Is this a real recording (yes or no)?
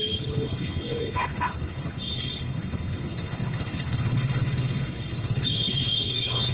no